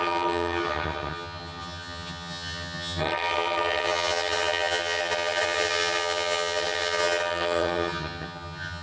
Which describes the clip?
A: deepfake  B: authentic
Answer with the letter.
A